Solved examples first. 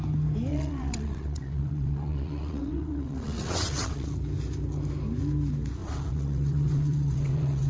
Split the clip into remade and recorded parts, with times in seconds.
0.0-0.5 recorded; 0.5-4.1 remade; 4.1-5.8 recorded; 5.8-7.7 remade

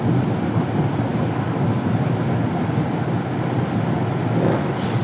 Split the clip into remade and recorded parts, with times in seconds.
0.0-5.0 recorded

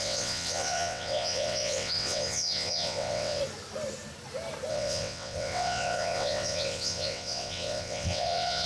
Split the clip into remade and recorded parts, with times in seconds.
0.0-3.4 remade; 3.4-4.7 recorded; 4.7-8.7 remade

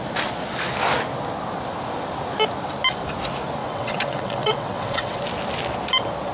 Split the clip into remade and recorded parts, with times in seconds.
0.0-3.6 recorded; 3.6-5.2 remade; 5.2-6.3 recorded

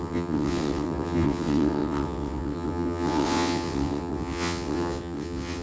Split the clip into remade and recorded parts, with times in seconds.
0.0-5.6 remade

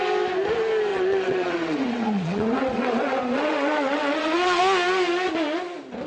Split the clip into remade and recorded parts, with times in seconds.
0.0-0.9 recorded; 0.9-4.6 remade; 4.6-6.1 recorded